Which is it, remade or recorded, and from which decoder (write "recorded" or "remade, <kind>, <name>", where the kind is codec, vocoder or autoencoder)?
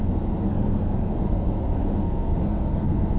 remade, codec, SNAC